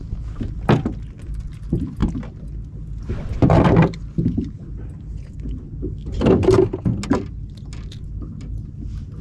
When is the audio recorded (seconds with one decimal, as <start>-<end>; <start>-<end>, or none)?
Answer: 0.0-9.2